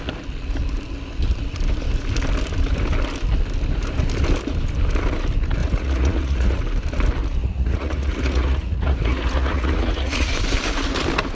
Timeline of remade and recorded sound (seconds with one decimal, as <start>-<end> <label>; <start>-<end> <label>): 0.0-5.6 recorded; 5.6-6.6 remade; 6.6-7.4 recorded; 7.4-10.3 remade; 10.3-11.3 recorded